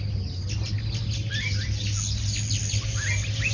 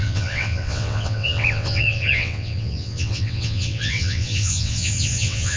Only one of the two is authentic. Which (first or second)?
first